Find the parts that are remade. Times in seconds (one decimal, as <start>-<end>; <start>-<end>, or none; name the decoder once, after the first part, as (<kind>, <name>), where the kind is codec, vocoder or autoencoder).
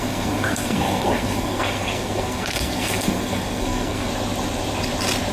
0.0-4.1 (codec, SNAC)